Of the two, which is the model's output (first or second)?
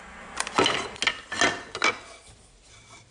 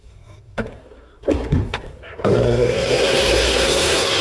second